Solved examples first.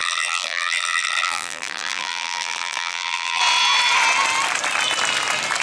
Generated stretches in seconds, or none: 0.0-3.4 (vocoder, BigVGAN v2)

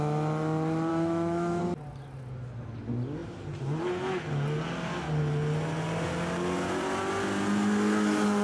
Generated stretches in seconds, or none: 0.9-1.6 (autoencoder, DAC-VAE)

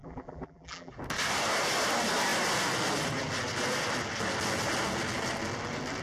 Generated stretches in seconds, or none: 0.0-0.9 (vocoder, BigVGAN v2)